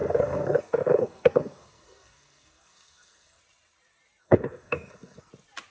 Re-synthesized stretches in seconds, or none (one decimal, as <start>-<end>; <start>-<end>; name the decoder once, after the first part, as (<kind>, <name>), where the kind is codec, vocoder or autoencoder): 0.0-3.4 (codec, SNAC); 4.2-5.3